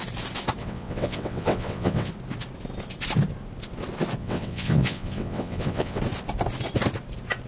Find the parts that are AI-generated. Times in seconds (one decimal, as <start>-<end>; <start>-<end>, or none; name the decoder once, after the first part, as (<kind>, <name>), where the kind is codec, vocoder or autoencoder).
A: 0.6-2.1 (vocoder, WaveNeXt); 4.2-6.0